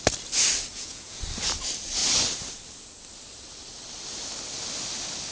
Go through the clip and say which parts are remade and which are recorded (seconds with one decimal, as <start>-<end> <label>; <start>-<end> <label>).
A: 0.0-0.7 recorded; 0.7-1.2 remade; 1.2-5.3 recorded